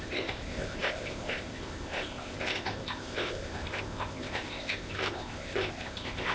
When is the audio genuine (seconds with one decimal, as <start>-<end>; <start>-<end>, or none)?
none